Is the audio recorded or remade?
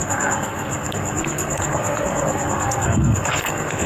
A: remade